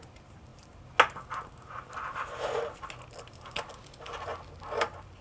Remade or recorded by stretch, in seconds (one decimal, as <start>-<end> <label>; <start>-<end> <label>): 0.0-5.2 recorded